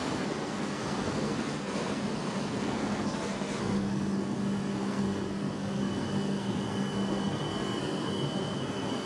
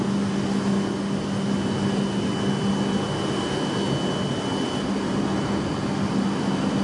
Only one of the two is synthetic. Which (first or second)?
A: first